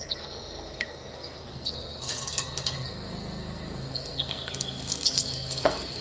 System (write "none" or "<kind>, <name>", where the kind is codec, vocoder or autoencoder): codec, SNAC